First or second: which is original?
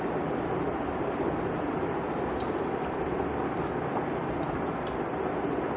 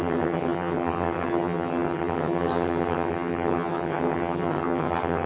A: first